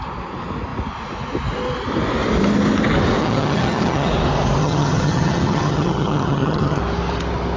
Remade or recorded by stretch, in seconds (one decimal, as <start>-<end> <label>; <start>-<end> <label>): 0.0-3.2 recorded; 3.2-4.1 remade; 4.1-4.6 recorded; 4.6-6.8 remade; 6.8-7.6 recorded